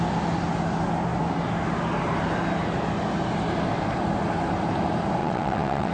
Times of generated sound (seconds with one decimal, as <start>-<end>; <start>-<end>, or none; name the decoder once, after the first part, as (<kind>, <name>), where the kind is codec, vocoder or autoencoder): 5.2-5.9 (vocoder, WaveNeXt)